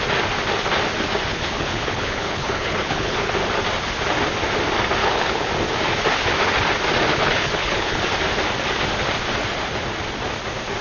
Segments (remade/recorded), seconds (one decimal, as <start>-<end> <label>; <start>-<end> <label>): 0.0-1.3 recorded; 1.3-3.3 remade; 3.3-5.0 recorded; 5.0-5.5 remade; 5.5-7.1 recorded; 7.1-8.0 remade; 8.0-10.8 recorded